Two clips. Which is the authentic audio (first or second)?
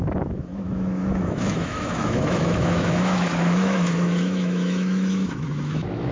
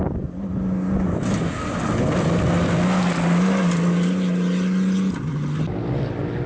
second